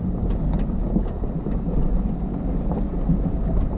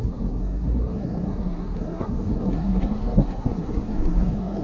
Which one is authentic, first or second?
first